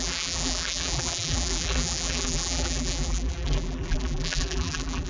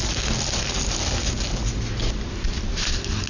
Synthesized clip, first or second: first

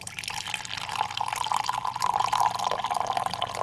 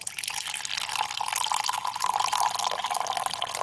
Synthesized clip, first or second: first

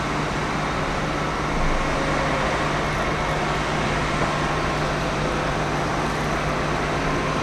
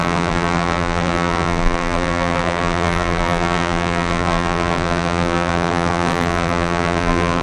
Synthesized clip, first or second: second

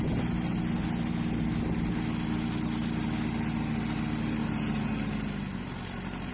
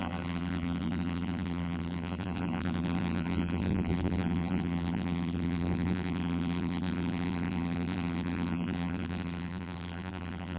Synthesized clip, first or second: second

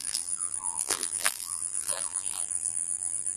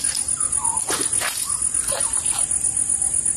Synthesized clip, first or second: first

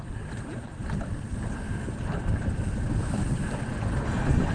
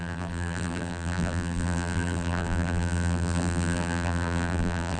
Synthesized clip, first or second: second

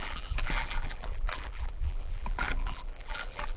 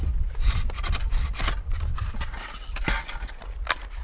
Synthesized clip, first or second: first